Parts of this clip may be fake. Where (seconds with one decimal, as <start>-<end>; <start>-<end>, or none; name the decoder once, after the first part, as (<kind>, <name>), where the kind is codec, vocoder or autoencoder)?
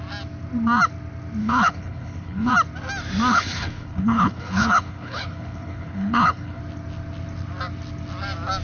1.4-2.5 (codec, HILCodec); 3.3-6.6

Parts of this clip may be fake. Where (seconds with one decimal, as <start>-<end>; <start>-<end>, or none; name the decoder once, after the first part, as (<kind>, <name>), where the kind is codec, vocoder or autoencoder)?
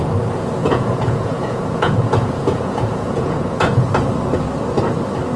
0.6-3.8 (vocoder, Vocos)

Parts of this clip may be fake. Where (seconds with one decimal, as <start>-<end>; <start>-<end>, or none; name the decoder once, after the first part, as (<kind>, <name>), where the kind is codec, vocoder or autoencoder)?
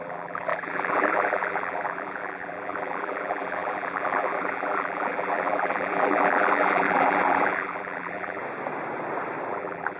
0.0-8.4 (vocoder, BigVGAN v2); 9.5-10.0